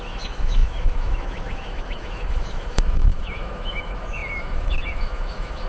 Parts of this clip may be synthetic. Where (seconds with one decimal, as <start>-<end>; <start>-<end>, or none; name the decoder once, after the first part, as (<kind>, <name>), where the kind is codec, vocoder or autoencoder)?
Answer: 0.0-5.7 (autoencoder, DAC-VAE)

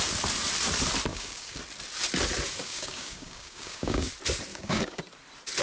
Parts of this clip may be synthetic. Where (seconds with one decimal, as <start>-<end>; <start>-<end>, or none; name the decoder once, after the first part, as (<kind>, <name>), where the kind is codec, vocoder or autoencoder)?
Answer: 1.1-1.6 (codec, DAC); 2.6-4.1; 4.5-5.0

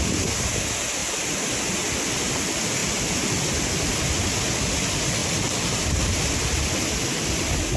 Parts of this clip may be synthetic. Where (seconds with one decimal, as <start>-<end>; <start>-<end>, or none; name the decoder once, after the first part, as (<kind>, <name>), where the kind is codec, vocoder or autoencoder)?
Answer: none